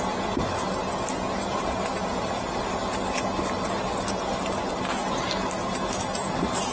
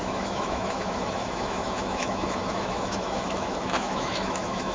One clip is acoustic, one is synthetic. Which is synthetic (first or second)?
second